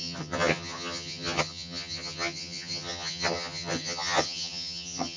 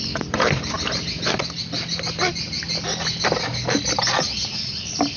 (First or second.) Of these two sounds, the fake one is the first